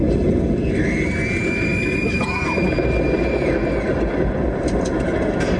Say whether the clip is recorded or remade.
recorded